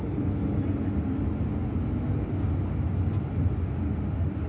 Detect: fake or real real